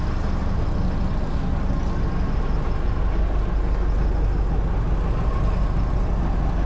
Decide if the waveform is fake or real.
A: real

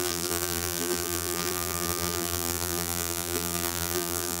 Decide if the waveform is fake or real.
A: fake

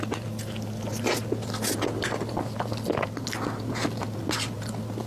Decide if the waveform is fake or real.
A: real